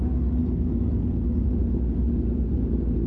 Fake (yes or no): no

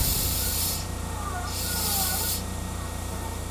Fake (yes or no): yes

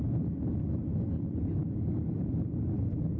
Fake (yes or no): no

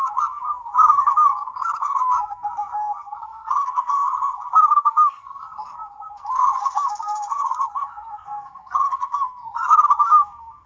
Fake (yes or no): yes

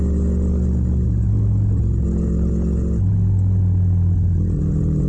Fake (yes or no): no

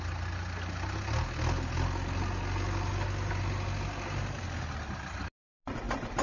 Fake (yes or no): no